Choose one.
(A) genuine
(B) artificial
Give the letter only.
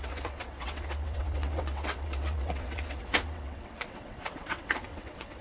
B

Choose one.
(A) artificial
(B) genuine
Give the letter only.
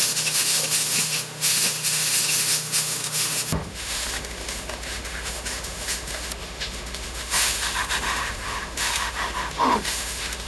A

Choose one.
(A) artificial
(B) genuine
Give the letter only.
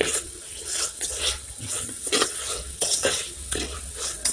A